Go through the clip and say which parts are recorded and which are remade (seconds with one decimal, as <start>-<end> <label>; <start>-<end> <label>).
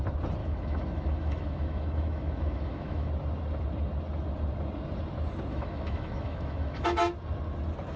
0.0-0.4 recorded; 0.4-3.1 remade; 3.1-5.5 recorded; 5.5-7.0 remade; 7.0-8.0 recorded